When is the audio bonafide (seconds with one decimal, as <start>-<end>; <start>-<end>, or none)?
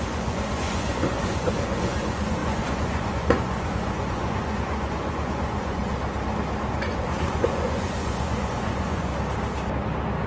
5.8-6.7; 9.1-10.3